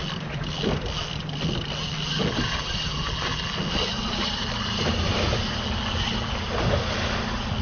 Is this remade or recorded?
recorded